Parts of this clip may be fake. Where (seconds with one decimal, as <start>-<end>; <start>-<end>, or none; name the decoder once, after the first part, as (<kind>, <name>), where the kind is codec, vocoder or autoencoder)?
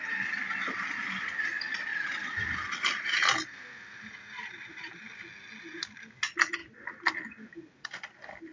none